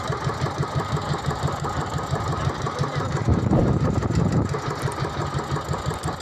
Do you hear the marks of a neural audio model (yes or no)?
no